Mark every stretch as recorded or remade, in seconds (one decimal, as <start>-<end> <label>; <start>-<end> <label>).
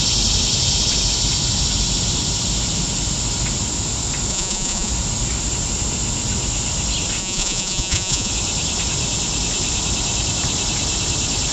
0.0-4.3 recorded; 4.3-4.9 remade; 4.9-7.2 recorded; 7.2-8.3 remade; 8.3-11.5 recorded